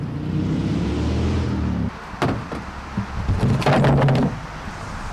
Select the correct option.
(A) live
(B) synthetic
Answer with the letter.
A